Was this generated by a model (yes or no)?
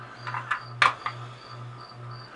no